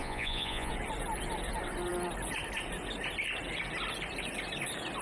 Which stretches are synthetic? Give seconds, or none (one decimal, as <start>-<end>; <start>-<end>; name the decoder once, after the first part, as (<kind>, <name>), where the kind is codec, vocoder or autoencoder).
0.0-0.7 (vocoder, Vocos)